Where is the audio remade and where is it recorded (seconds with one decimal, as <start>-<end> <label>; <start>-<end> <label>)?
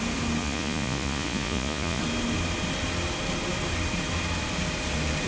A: 0.0-0.4 recorded; 0.4-2.0 remade; 2.0-5.3 recorded